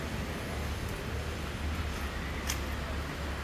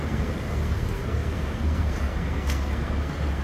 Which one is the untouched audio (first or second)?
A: first